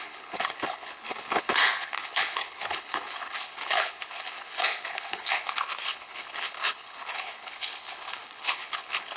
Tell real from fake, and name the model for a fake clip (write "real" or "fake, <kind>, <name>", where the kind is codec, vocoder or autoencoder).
fake, codec, HILCodec